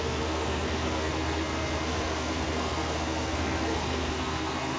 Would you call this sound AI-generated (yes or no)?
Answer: yes